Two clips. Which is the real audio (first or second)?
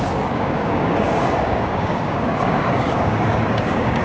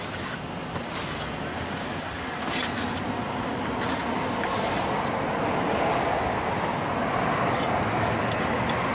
second